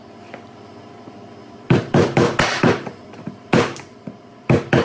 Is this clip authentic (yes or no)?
no